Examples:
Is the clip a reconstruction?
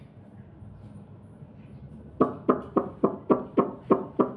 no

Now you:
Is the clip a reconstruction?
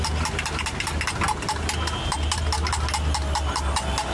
no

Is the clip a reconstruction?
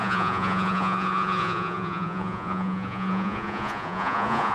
yes